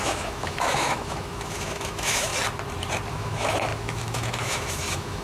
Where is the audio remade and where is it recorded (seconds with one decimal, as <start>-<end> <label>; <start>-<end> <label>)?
0.0-2.3 remade; 2.3-3.1 recorded; 3.1-5.2 remade